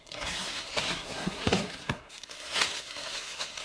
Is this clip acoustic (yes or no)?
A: no